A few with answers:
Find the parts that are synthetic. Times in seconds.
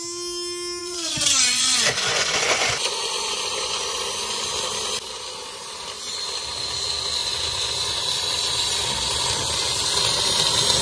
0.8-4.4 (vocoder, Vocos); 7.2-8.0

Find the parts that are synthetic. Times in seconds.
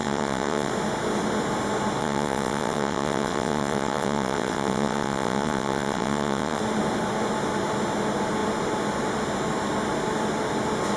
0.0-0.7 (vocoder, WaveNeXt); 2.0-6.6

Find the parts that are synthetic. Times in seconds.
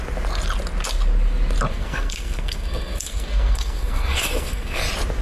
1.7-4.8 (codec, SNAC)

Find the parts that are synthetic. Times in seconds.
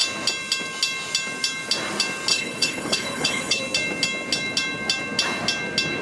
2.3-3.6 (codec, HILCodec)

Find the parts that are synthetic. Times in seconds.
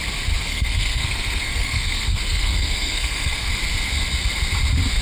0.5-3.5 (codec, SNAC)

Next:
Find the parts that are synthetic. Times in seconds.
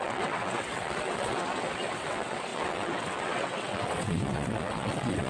0.0-5.3 (vocoder, WaveNeXt)